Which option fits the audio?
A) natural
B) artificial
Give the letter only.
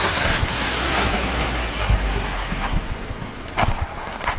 B